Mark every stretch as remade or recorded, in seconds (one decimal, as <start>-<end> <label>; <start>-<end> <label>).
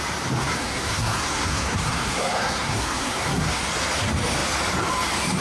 0.0-0.4 recorded; 0.4-3.6 remade; 3.6-5.4 recorded